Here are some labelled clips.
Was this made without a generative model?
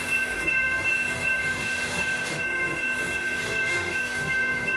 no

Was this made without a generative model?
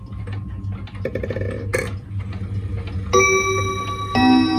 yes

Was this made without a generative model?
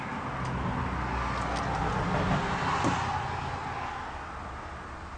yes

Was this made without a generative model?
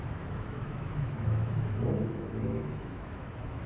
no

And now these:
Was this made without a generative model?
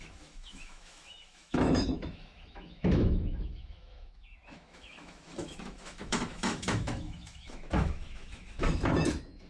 no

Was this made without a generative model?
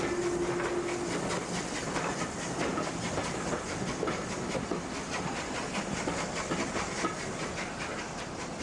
yes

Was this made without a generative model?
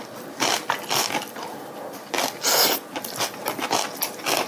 yes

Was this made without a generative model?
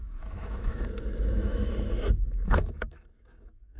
no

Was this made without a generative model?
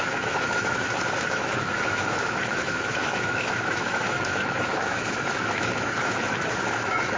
no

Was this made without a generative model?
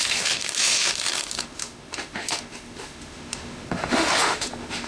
no